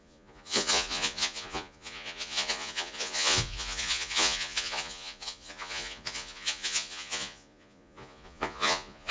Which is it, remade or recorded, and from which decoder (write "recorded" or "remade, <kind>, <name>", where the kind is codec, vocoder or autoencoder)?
remade, vocoder, Vocos